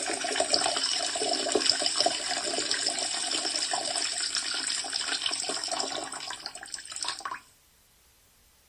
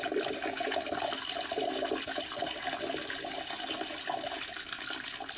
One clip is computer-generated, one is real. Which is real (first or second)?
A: second